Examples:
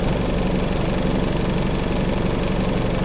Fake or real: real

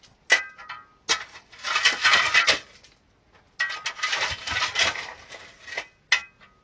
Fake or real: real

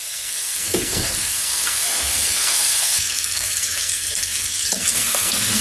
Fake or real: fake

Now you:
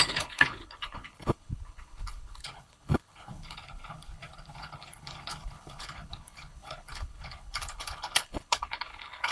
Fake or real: fake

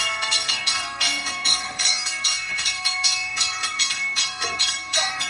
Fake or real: fake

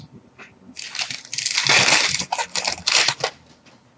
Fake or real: real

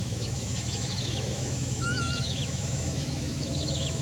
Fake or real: fake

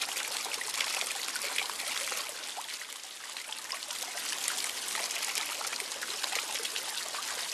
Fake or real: real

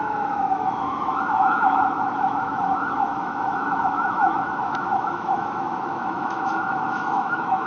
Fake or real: fake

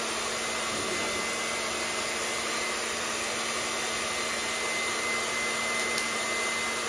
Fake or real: real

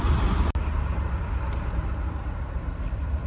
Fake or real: real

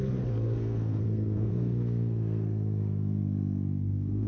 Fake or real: fake